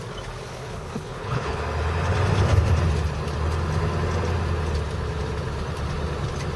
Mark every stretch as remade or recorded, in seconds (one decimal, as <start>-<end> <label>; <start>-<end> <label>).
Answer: 0.0-0.5 recorded; 0.5-1.6 remade; 1.6-6.6 recorded